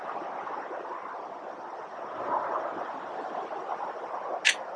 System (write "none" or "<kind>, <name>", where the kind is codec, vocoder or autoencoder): none